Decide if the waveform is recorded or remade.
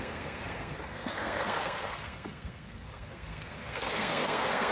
remade